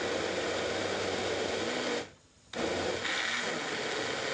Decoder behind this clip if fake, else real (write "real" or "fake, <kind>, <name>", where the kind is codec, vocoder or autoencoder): real